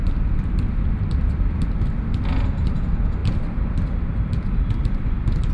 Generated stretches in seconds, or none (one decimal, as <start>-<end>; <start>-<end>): 0.0-0.7; 3.2-5.5